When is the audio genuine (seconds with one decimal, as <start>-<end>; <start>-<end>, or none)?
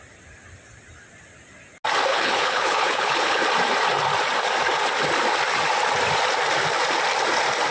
0.0-2.1; 3.4-7.7